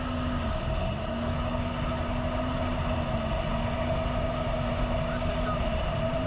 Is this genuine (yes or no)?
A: yes